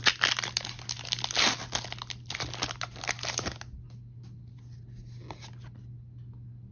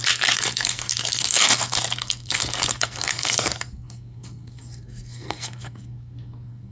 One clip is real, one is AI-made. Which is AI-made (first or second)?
second